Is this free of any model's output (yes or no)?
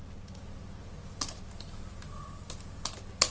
yes